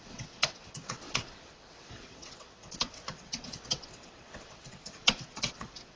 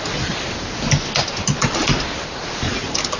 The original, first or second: second